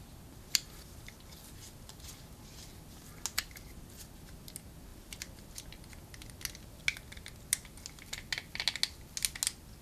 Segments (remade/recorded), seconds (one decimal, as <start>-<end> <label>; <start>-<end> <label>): 0.0-9.8 recorded